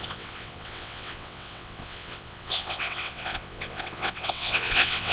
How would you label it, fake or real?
fake